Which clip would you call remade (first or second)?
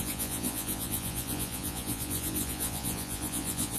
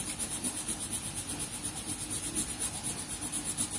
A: first